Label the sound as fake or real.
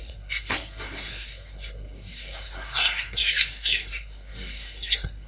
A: fake